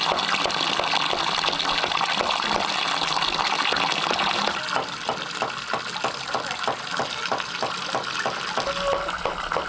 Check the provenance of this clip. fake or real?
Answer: real